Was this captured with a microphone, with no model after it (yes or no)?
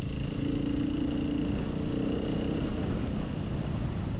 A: yes